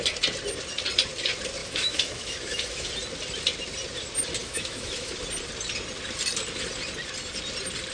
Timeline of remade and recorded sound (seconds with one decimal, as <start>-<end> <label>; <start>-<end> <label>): 0.0-1.6 recorded; 1.6-2.9 remade; 2.9-4.4 recorded; 4.4-5.1 remade; 5.1-7.9 recorded

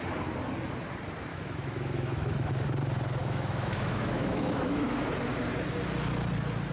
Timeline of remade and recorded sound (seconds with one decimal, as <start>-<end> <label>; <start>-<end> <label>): 0.0-1.3 recorded; 1.3-2.5 remade; 2.5-3.2 recorded; 3.2-5.0 remade; 5.0-6.7 recorded

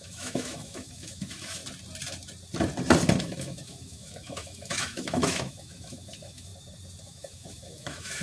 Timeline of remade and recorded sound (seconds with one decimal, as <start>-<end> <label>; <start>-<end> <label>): 0.0-1.6 remade; 1.6-3.2 recorded; 3.2-6.5 remade; 6.5-7.0 recorded; 7.0-8.2 remade

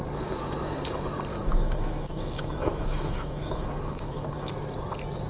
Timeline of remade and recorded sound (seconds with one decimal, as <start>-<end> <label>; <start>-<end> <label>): 0.0-1.3 recorded; 1.3-4.5 remade; 4.5-5.3 recorded

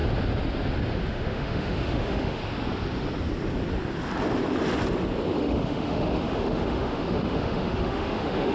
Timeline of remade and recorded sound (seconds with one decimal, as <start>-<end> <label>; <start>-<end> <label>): 0.0-0.9 recorded; 0.9-2.4 remade; 2.4-5.4 recorded; 5.4-8.5 remade

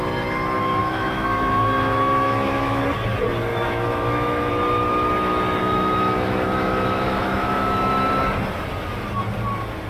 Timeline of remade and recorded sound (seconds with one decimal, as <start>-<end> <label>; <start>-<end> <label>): 0.0-0.8 recorded; 0.8-2.8 remade; 2.8-3.5 recorded; 3.5-4.5 remade; 4.5-5.6 recorded; 5.6-8.1 remade; 8.1-9.9 recorded

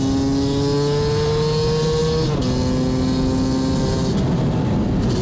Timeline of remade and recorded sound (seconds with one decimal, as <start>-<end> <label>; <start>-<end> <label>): 0.0-5.2 recorded